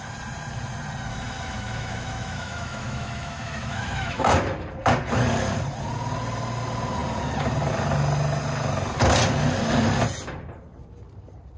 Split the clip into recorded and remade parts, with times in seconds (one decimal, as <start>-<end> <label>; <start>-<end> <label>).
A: 0.0-1.1 recorded; 1.1-4.3 remade; 4.3-11.6 recorded